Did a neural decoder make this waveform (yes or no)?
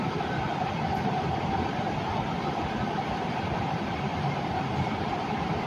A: yes